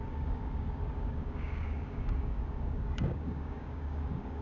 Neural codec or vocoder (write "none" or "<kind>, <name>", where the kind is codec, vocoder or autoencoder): codec, DAC